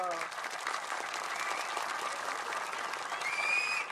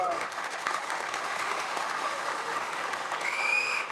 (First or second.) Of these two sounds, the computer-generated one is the second